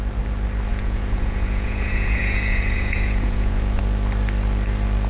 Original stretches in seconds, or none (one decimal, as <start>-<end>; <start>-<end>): 0.0-0.7; 3.8-5.1